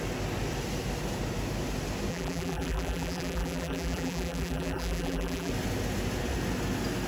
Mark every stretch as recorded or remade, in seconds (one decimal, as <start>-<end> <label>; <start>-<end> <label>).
0.0-2.1 recorded; 2.1-5.5 remade; 5.5-7.1 recorded